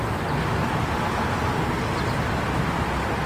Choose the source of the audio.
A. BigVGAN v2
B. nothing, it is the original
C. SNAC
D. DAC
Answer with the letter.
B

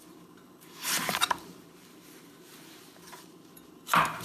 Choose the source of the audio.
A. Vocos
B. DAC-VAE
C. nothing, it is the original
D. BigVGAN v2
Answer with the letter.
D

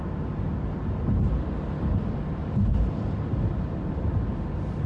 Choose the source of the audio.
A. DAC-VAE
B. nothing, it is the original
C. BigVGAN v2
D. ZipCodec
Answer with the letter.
B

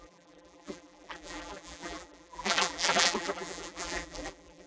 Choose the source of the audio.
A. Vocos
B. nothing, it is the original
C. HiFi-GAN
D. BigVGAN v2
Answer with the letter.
D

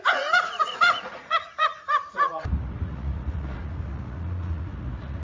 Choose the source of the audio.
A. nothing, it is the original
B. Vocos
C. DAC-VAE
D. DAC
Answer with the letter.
B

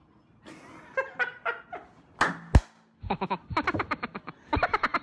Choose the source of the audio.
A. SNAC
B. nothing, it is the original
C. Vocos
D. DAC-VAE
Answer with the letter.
B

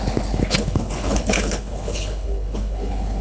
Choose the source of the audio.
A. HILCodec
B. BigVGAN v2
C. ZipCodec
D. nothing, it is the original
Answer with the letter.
A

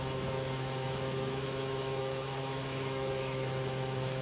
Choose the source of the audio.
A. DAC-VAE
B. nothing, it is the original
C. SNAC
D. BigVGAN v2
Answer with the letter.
A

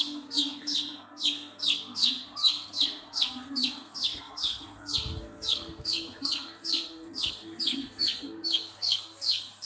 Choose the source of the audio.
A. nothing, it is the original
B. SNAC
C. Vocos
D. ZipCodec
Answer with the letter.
B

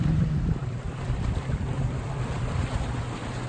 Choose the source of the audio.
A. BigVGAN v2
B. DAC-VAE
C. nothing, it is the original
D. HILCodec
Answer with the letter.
A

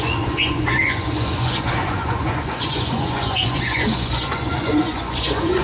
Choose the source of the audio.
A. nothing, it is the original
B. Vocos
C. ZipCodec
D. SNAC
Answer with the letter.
B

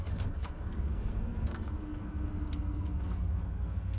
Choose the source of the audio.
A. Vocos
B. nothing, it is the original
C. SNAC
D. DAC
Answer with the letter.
C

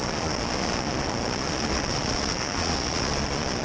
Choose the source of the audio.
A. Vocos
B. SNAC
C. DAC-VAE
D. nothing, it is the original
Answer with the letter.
A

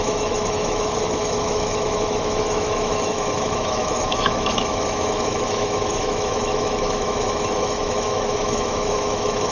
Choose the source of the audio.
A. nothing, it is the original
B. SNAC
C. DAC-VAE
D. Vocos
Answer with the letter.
C